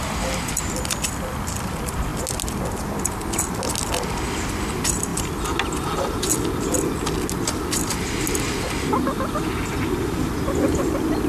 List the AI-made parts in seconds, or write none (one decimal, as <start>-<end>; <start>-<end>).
none